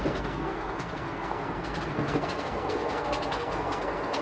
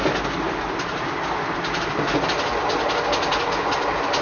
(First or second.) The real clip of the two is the second